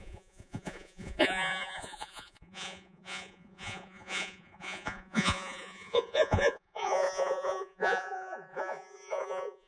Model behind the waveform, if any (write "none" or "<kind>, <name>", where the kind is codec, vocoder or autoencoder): vocoder, Vocos